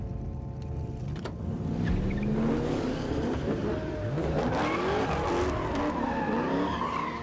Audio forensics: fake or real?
real